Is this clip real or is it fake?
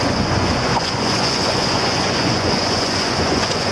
fake